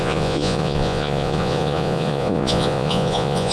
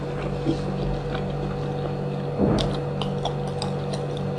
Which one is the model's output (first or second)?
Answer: first